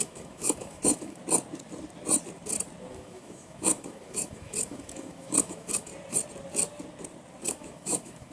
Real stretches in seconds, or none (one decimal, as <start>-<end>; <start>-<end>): 1.2-2.9; 5.9-7.5